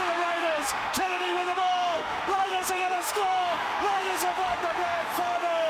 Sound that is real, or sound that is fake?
fake